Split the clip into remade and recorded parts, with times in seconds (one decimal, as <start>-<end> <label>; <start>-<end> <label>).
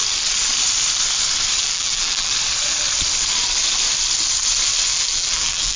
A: 0.0-1.6 recorded; 1.6-2.3 remade; 2.3-4.9 recorded; 4.9-5.8 remade